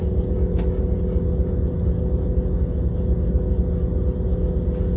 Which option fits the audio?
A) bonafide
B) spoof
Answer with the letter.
A